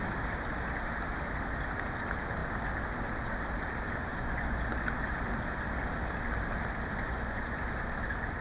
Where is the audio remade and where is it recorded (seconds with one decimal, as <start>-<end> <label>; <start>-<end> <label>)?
0.0-4.1 recorded; 4.1-4.6 remade; 4.6-6.9 recorded; 6.9-7.6 remade; 7.6-8.4 recorded